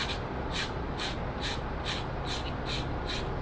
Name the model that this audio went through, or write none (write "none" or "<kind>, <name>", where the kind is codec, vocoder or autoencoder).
none